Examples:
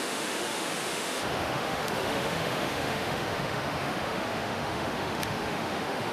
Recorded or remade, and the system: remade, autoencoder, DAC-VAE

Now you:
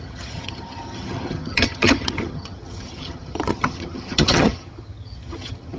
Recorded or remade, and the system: remade, vocoder, HiFi-GAN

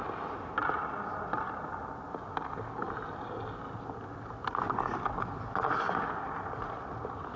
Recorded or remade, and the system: recorded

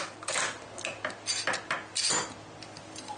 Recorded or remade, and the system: recorded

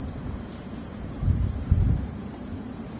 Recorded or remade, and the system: remade, vocoder, BigVGAN v2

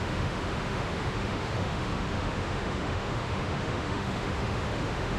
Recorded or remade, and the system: remade, autoencoder, DAC-VAE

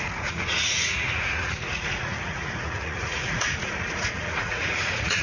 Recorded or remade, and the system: remade, vocoder, Vocos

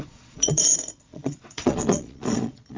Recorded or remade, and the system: remade, vocoder, Vocos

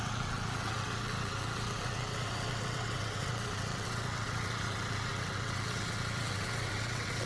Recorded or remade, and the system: remade, vocoder, WaveNeXt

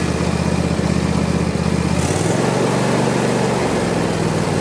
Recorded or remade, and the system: recorded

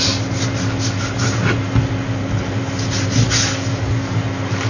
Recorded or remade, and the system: recorded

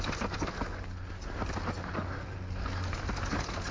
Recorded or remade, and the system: recorded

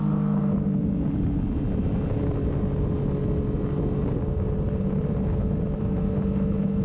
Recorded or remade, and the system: recorded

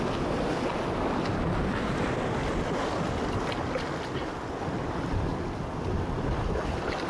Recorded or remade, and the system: recorded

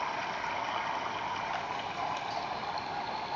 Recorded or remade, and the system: recorded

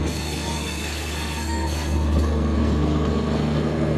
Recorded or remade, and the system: remade, codec, SNAC